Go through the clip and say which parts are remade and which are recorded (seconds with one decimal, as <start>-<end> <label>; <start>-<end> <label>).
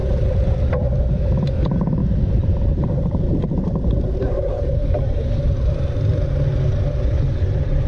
0.0-0.6 remade; 0.6-2.0 recorded; 2.0-6.3 remade; 6.3-7.9 recorded